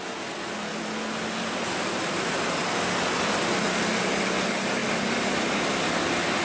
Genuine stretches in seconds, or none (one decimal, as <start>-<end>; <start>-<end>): 0.0-6.4